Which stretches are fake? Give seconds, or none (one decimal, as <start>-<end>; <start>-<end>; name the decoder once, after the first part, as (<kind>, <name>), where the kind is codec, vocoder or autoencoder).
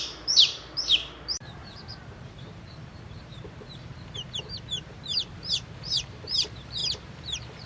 0.0-7.7 (vocoder, BigVGAN v2)